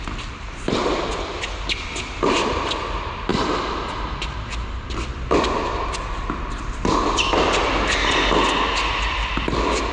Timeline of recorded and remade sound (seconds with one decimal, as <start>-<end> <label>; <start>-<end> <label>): 0.0-9.9 recorded